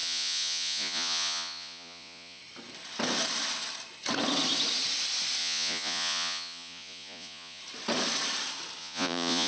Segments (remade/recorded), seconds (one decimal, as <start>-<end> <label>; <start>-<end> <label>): 0.0-2.4 remade; 2.4-5.4 recorded; 5.4-7.6 remade; 7.6-8.8 recorded; 8.8-9.5 remade